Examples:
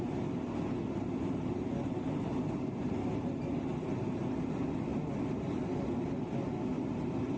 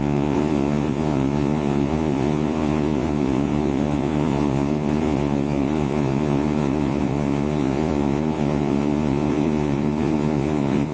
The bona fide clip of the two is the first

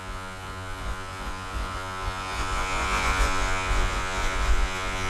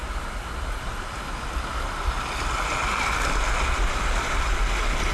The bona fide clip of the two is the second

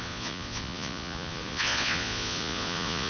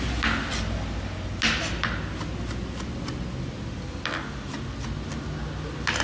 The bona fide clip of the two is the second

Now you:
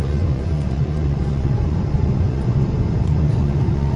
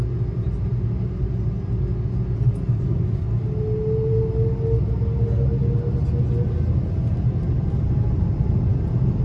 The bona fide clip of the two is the second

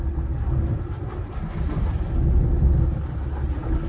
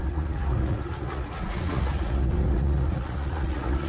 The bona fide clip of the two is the first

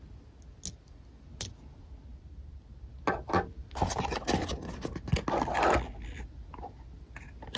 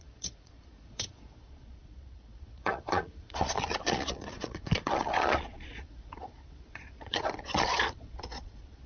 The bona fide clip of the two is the first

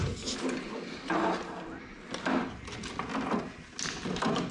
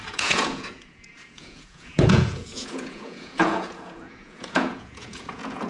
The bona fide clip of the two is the first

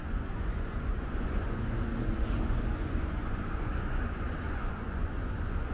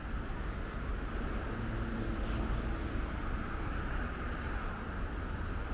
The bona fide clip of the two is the second